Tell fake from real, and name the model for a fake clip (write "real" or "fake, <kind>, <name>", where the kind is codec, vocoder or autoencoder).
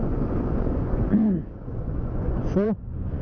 fake, vocoder, Vocos